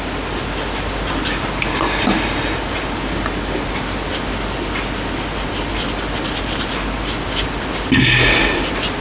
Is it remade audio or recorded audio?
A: recorded